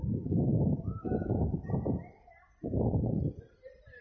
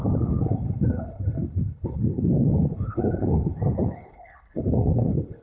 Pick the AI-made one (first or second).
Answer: second